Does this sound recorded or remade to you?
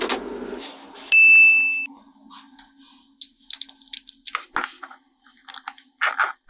recorded